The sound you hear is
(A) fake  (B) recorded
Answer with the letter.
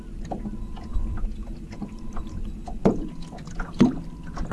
B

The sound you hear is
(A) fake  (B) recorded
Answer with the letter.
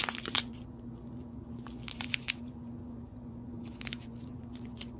A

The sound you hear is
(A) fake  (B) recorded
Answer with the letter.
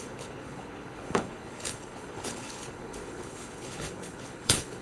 A